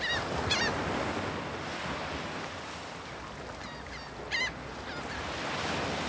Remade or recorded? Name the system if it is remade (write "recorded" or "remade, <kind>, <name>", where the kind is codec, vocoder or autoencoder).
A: recorded